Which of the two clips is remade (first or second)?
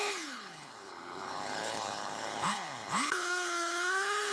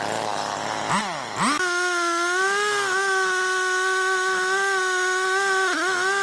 first